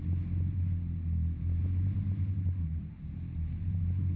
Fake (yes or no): no